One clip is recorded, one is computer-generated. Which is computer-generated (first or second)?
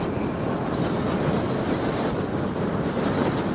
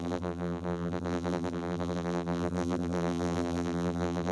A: second